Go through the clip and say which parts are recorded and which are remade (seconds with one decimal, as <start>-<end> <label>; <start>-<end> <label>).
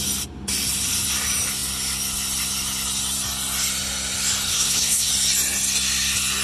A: 0.0-4.5 recorded; 4.5-5.1 remade; 5.1-6.4 recorded